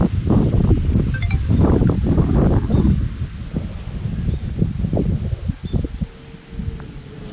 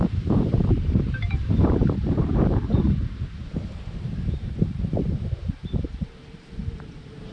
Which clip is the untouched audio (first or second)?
first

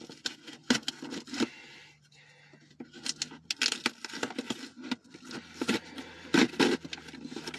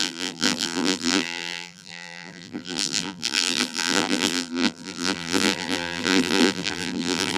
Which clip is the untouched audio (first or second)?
first